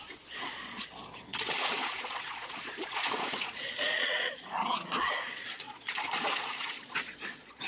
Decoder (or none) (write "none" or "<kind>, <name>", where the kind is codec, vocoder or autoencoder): vocoder, Vocos